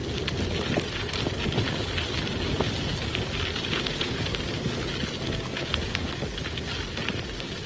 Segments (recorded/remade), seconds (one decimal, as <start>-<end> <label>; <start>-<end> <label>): 0.0-3.7 recorded; 3.7-4.3 remade; 4.3-5.5 recorded; 5.5-6.1 remade; 6.1-7.7 recorded